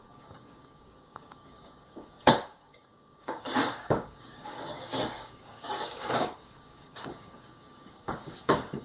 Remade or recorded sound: remade